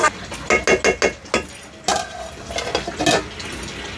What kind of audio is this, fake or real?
real